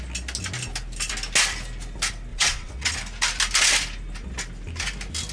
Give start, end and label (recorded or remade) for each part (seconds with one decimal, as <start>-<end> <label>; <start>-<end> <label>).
0.0-2.3 recorded; 2.3-2.9 remade; 2.9-5.3 recorded